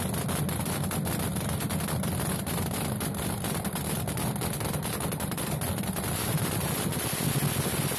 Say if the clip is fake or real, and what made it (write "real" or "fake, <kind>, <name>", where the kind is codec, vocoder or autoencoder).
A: real